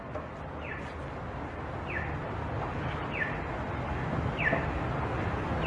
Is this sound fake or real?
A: real